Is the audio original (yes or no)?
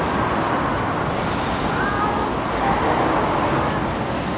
yes